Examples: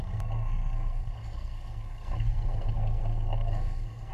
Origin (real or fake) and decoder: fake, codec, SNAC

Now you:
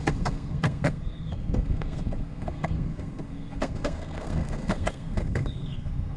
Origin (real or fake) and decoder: fake, codec, SNAC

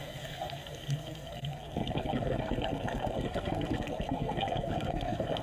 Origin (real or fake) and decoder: fake, codec, SNAC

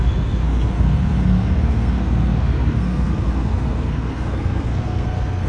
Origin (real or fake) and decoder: fake, codec, SNAC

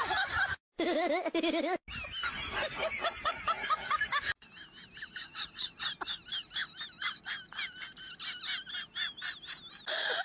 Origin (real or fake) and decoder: real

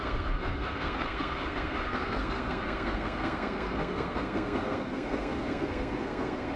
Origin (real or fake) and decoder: fake, codec, SNAC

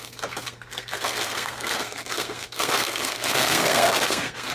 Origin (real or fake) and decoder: fake, codec, SNAC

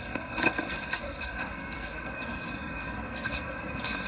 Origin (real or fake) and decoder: fake, codec, SNAC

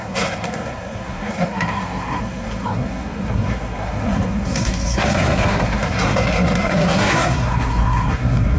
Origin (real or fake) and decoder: fake, codec, SNAC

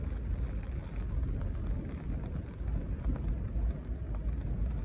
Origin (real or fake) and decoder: real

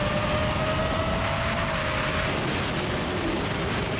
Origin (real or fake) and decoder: real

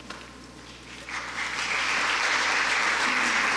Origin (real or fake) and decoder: real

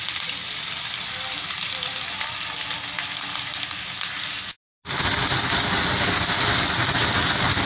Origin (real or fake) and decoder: real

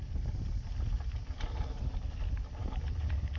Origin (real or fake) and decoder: real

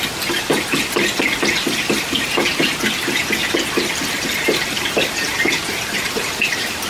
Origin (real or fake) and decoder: real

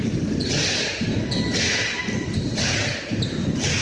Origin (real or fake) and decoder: real